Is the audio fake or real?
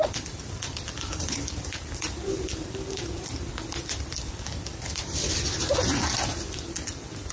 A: fake